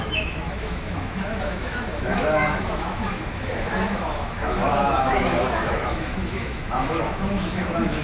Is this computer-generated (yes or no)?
yes